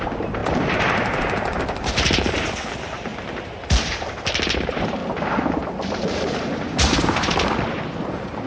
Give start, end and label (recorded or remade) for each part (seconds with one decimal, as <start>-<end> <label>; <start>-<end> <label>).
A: 0.0-3.1 remade; 3.1-4.6 recorded; 4.6-5.0 remade; 5.0-5.5 recorded; 5.5-8.5 remade